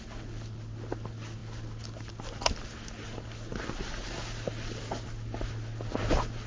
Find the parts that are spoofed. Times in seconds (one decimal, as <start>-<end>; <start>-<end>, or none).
none